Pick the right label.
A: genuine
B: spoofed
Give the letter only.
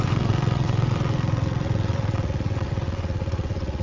B